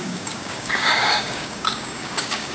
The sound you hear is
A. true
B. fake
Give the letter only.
B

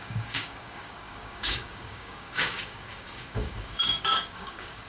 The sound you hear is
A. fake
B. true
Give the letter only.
A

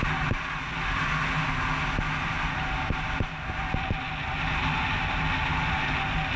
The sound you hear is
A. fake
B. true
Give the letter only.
B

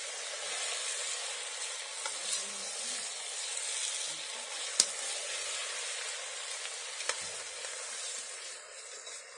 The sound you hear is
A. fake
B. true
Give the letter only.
B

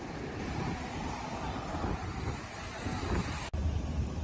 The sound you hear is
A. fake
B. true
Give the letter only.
B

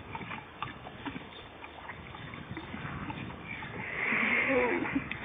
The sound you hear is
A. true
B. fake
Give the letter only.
B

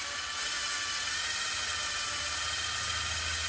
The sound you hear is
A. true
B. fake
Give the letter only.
A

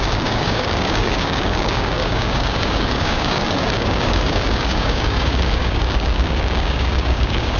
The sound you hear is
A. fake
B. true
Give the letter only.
A